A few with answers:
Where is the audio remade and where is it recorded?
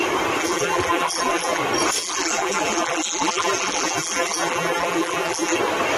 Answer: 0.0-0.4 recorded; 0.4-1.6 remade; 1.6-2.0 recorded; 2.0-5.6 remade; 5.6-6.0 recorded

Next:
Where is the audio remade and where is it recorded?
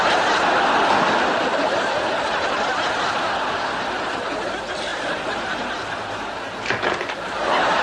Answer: 0.0-4.9 recorded; 4.9-5.7 remade; 5.7-7.8 recorded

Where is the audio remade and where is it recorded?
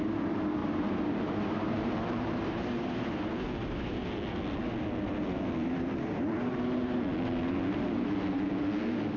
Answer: 0.0-0.6 recorded; 0.6-3.1 remade; 3.1-9.2 recorded